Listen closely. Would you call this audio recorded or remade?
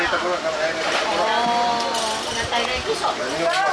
recorded